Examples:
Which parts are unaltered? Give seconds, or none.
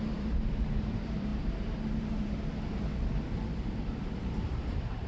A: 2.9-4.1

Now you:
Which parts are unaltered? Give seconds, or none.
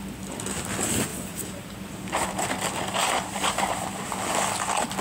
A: 0.0-1.1; 2.5-3.0; 3.8-5.0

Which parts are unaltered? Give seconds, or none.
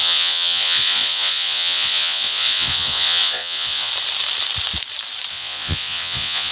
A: 3.9-5.3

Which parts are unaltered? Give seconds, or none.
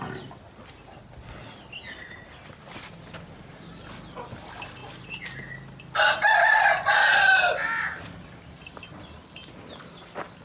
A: 0.0-10.4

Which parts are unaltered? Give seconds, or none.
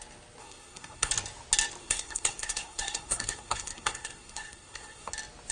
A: 0.0-0.4; 1.1-1.8; 5.1-5.5